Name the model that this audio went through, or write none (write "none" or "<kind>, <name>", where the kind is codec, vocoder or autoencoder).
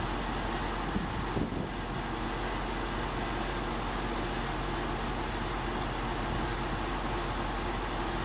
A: none